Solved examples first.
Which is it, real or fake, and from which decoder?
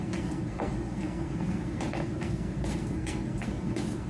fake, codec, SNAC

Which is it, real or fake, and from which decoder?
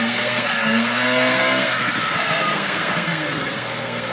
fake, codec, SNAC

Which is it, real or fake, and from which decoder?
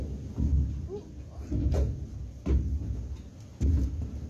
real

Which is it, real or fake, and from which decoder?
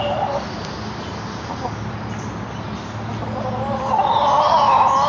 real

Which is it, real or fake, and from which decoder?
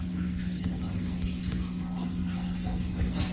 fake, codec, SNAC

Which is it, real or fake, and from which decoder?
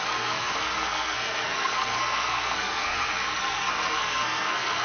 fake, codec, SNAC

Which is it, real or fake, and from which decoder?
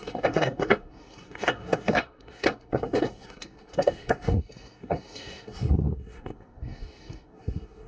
fake, codec, SNAC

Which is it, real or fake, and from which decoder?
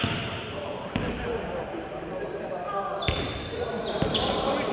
real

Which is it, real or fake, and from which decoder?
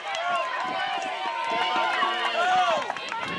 real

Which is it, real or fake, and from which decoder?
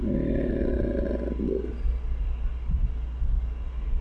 real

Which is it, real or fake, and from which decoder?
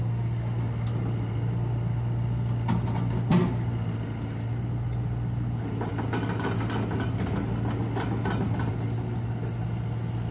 real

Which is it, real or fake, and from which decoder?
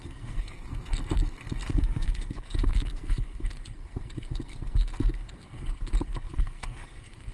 fake, codec, SNAC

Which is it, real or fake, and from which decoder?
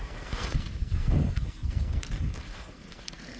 fake, codec, SNAC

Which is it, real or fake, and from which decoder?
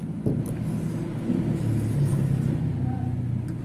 real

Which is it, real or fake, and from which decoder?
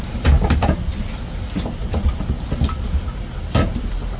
real